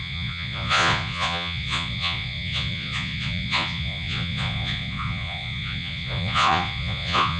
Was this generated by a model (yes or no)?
yes